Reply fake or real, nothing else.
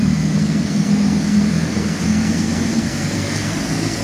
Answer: fake